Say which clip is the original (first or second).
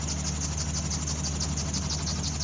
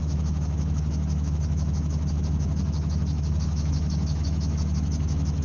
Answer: first